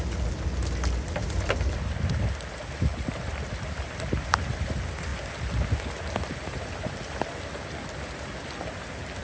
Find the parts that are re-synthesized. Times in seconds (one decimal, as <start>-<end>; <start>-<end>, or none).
none